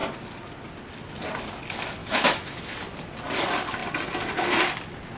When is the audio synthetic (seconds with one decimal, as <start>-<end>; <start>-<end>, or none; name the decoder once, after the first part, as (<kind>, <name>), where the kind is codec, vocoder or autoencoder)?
2.0-2.6 (autoencoder, DAC-VAE)